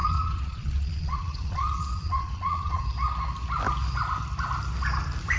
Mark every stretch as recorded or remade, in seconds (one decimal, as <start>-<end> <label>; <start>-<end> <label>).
0.0-2.8 remade; 2.8-5.4 recorded